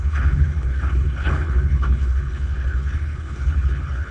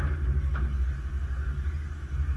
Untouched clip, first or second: second